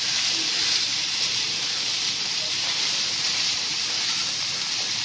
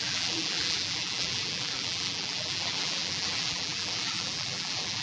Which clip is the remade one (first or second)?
second